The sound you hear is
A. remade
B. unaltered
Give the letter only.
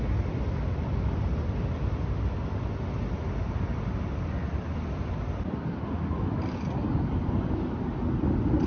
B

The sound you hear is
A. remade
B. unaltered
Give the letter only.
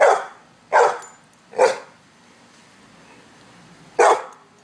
B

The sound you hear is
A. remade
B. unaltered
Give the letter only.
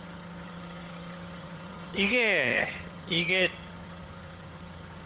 A